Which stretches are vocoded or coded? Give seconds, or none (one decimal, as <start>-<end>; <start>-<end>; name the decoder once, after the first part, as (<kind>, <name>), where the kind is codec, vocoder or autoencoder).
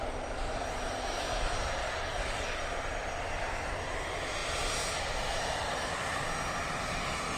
1.8-2.6 (codec, DAC)